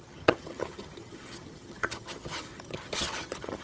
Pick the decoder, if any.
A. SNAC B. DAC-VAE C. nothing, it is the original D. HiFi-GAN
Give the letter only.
D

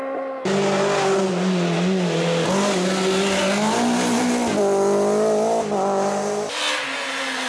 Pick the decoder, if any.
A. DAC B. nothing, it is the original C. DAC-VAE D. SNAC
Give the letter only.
B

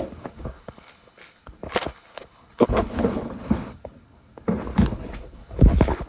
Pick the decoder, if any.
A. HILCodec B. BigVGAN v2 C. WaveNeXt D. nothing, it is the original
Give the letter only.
A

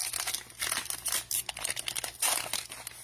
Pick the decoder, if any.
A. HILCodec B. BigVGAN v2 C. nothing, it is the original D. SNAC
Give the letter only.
C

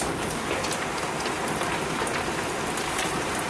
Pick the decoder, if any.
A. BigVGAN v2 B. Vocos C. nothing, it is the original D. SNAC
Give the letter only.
C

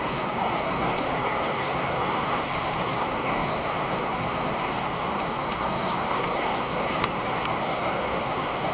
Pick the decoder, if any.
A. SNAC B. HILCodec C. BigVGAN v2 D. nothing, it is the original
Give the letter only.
A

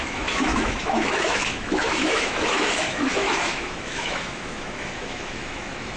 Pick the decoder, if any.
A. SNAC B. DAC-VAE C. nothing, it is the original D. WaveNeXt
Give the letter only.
B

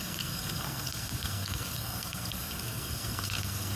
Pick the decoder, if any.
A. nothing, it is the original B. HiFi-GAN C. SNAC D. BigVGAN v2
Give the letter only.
C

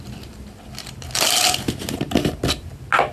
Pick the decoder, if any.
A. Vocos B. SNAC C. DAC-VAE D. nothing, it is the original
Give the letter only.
D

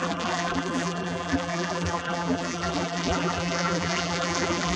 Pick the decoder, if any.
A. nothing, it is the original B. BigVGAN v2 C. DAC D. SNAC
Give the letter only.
B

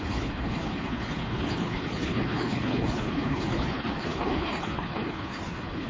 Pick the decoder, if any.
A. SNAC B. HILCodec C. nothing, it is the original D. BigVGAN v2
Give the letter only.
B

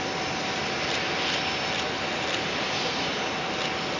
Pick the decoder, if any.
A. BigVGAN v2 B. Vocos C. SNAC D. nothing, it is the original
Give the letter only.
D